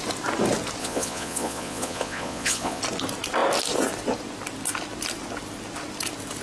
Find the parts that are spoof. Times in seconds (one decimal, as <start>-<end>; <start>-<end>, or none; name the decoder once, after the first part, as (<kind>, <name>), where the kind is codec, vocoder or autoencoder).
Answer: 0.8-2.8 (vocoder, Vocos)